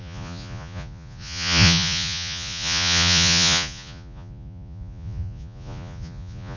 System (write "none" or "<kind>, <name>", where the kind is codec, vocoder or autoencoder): vocoder, Vocos